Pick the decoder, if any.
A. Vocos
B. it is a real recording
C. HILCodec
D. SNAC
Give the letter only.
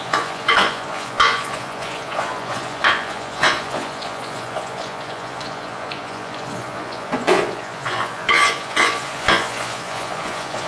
A